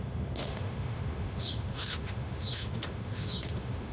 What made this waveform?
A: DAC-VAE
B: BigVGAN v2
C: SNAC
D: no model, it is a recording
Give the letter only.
A